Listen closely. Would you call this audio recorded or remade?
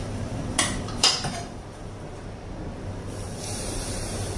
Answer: remade